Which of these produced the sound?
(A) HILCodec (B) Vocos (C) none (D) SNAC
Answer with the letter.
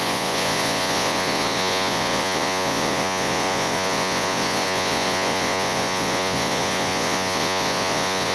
B